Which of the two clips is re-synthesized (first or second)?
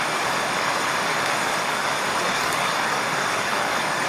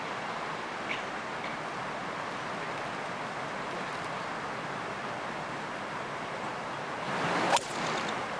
first